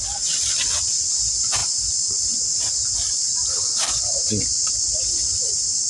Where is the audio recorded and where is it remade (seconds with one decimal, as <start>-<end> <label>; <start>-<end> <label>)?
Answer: 0.0-3.2 recorded; 3.2-5.9 remade

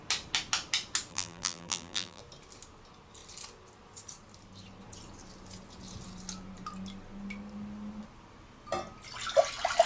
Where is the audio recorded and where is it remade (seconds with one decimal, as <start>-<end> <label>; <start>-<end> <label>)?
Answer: 0.0-1.1 recorded; 1.1-2.2 remade; 2.2-9.9 recorded

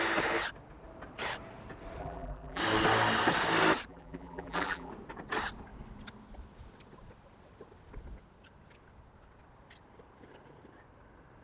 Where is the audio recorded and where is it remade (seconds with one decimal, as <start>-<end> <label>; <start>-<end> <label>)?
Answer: 0.0-2.0 recorded; 2.0-2.6 remade; 2.6-3.9 recorded; 3.9-4.9 remade; 4.9-11.4 recorded

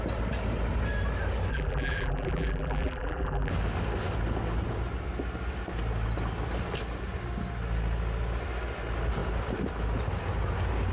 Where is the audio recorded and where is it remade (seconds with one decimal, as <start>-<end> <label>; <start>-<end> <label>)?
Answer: 0.0-1.5 recorded; 1.5-3.5 remade; 3.5-10.9 recorded

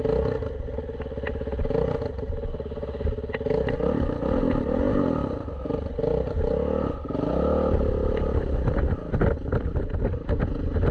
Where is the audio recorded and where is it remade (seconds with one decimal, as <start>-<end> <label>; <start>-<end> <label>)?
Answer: 0.0-5.2 recorded; 5.2-6.5 remade; 6.5-10.9 recorded

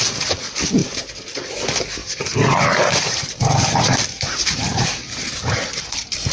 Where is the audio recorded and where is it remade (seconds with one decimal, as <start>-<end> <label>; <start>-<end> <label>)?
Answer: 0.0-2.0 recorded; 2.0-5.8 remade; 5.8-6.3 recorded

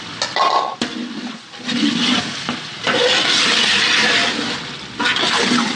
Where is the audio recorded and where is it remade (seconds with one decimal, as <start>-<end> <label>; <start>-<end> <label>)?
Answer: 0.0-1.0 recorded; 1.0-3.2 remade; 3.2-5.8 recorded

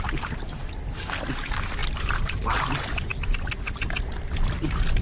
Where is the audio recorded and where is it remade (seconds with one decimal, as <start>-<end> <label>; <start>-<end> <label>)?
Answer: 0.0-1.8 recorded; 1.8-2.5 remade; 2.5-5.0 recorded